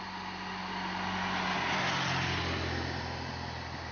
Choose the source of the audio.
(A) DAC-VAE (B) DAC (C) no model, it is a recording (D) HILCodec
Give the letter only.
C